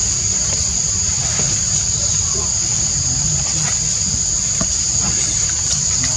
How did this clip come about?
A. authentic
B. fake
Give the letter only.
A